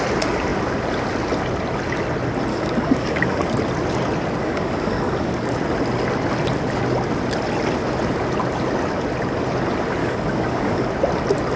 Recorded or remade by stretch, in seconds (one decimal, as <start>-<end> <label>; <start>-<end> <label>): 0.0-2.5 recorded; 2.5-3.5 remade; 3.5-4.4 recorded; 4.4-5.5 remade; 5.5-10.0 recorded; 10.0-10.9 remade; 10.9-11.6 recorded